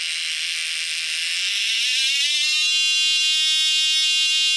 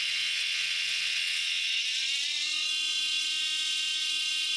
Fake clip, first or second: second